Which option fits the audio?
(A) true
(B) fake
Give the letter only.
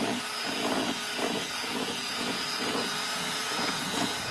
B